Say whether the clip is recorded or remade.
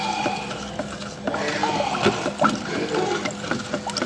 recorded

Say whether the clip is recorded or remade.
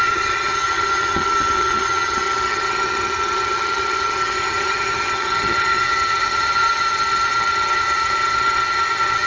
remade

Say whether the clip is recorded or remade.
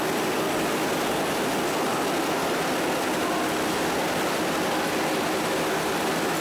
recorded